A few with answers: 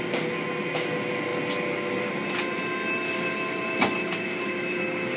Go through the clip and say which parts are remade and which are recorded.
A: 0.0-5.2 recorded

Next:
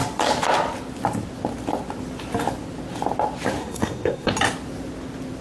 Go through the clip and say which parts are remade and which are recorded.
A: 0.0-3.6 recorded; 3.6-4.3 remade; 4.3-5.4 recorded

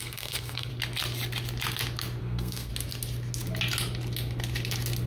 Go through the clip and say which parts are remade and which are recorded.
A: 0.0-0.7 remade; 0.7-2.2 recorded; 2.2-2.7 remade; 2.7-5.1 recorded